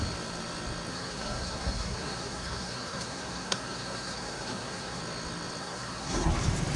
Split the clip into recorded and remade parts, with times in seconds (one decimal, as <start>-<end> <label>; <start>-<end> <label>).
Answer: 0.0-0.9 recorded; 0.9-5.0 remade; 5.0-5.6 recorded; 5.6-6.3 remade; 6.3-6.8 recorded